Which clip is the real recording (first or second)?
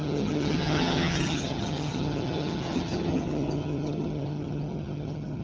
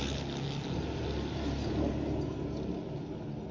second